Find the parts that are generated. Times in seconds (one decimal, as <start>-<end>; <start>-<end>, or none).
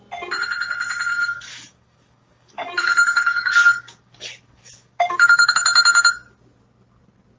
1.1-5.5